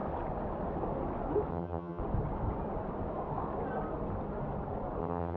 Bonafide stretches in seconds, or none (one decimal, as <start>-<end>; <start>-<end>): 0.0-1.5; 2.0-5.0